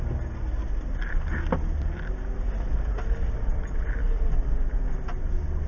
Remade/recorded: recorded